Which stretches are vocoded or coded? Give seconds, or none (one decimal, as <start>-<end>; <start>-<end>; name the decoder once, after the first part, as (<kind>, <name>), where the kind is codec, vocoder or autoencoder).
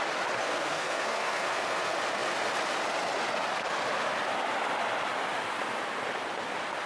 0.4-1.8 (codec, SNAC)